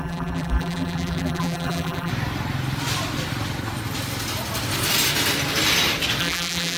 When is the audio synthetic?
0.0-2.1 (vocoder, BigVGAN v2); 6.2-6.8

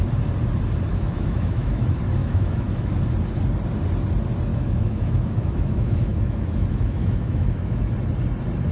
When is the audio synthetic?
0.9-1.8 (autoencoder, DAC-VAE); 2.2-2.9; 4.5-7.9

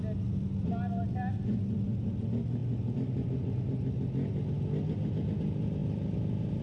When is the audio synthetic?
none